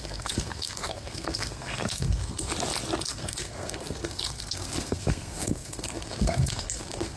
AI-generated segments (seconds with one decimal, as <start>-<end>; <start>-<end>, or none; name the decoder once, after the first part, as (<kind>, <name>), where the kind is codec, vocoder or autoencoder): 0.0-2.5 (codec, SNAC); 3.1-7.2